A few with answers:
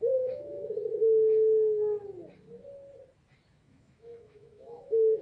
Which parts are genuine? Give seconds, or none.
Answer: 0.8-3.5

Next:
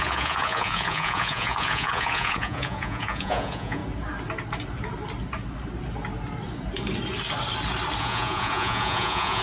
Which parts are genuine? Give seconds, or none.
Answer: 3.8-8.0